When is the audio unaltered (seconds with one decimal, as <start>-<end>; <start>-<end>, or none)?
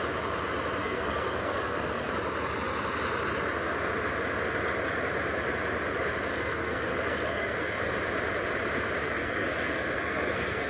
0.0-0.8; 2.1-6.3; 7.9-9.0